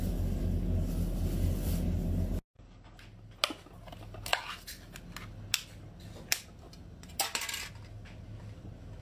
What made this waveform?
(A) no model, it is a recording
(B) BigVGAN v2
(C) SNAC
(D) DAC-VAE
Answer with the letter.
A